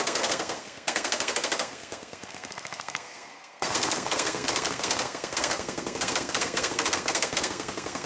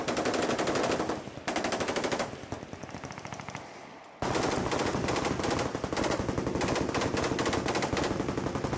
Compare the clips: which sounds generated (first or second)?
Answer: first